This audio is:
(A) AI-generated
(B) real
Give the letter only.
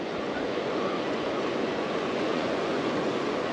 A